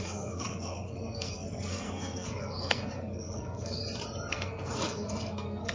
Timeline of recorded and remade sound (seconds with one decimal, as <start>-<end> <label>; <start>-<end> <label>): 0.0-3.8 remade; 3.8-4.3 recorded; 4.3-5.7 remade